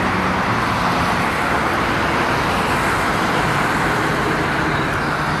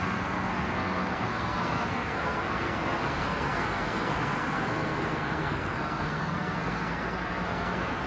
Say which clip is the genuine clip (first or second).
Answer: first